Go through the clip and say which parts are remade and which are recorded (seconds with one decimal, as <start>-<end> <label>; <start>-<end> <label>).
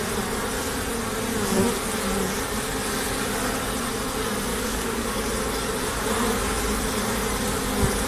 0.0-4.5 recorded; 4.5-5.2 remade; 5.2-8.1 recorded